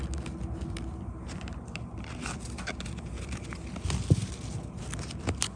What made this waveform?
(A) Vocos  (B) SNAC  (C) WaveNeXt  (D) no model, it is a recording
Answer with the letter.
D